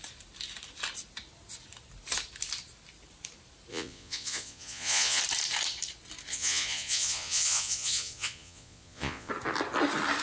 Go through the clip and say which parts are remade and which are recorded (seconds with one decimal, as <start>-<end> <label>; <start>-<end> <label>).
0.0-3.7 recorded; 3.7-5.2 remade; 5.2-6.3 recorded; 6.3-9.3 remade; 9.3-10.2 recorded